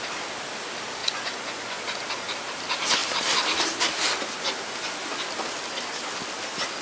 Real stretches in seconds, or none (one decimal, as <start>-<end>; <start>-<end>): 0.0-1.0; 1.8-6.8